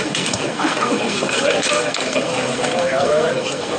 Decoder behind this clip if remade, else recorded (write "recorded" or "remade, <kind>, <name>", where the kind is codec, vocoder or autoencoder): remade, codec, SNAC